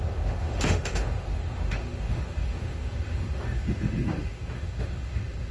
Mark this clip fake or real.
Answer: fake